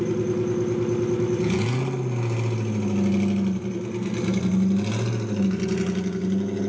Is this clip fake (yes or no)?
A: no